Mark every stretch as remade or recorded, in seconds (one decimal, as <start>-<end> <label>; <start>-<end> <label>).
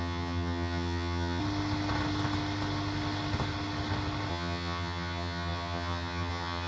0.0-1.4 remade; 1.4-4.3 recorded; 4.3-6.7 remade